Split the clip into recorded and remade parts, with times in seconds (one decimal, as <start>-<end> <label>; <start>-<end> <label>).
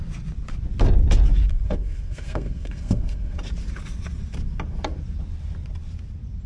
0.0-1.5 recorded; 1.5-3.4 remade; 3.4-6.5 recorded